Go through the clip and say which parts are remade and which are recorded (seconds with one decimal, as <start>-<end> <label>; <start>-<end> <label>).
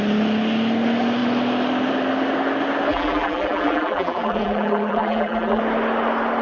0.0-2.9 recorded; 2.9-5.6 remade; 5.6-6.4 recorded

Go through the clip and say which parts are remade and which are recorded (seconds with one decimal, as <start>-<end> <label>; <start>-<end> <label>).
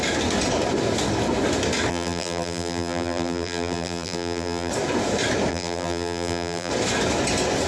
0.0-1.9 recorded; 1.9-4.7 remade; 4.7-5.5 recorded; 5.5-6.7 remade; 6.7-7.7 recorded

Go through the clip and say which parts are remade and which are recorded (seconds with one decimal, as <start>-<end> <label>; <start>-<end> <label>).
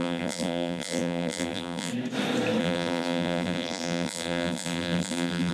0.0-1.9 remade; 1.9-2.6 recorded; 2.6-5.5 remade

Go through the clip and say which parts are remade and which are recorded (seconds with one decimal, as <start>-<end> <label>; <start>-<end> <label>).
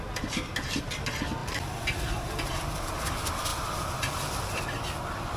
0.0-1.4 recorded; 1.4-2.8 remade; 2.8-3.5 recorded; 3.5-4.6 remade; 4.6-5.4 recorded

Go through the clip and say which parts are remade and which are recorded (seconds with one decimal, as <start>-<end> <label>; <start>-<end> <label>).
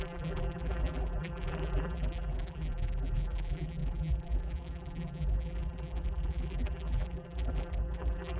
0.0-8.4 remade